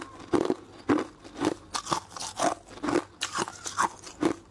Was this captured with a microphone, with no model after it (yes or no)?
yes